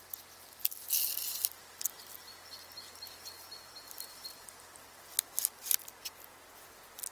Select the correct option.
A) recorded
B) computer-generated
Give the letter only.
A